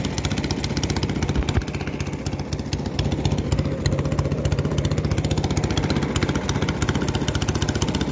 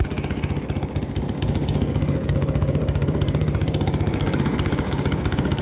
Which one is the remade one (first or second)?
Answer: second